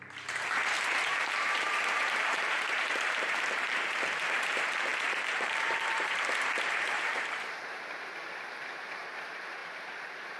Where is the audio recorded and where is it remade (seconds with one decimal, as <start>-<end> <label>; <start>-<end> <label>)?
0.0-10.4 remade